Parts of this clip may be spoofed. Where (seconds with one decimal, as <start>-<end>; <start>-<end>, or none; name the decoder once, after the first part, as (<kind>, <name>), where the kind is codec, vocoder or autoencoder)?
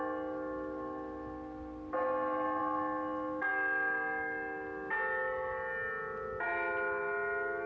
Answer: none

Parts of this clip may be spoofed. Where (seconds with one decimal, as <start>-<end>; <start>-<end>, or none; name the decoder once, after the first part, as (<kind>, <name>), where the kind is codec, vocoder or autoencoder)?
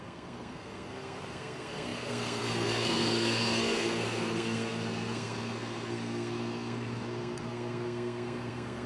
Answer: 0.0-8.9 (codec, SNAC)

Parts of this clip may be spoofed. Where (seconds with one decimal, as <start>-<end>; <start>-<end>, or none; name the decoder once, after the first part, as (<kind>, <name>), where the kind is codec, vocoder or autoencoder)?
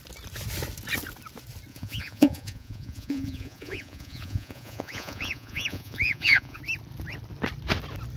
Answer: 1.7-6.6 (vocoder, Vocos)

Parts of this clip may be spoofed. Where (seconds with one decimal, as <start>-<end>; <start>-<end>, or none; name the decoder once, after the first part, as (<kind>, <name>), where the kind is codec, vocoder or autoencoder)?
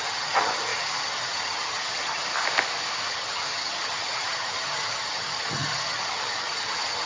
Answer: 0.0-2.3 (vocoder, HiFi-GAN); 3.1-7.1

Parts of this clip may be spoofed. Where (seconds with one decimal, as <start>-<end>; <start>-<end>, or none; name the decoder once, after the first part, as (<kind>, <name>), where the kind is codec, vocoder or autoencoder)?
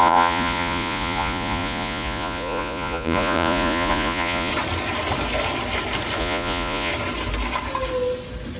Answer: 0.0-4.5 (vocoder, Vocos); 6.2-6.9